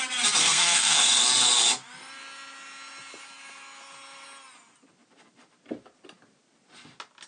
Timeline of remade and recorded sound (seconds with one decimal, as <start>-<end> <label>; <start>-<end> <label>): 0.0-0.4 recorded; 0.4-1.2 remade; 1.2-7.3 recorded